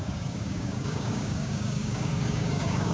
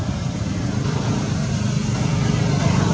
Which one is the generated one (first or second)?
first